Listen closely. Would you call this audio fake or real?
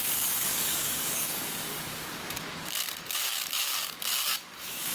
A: fake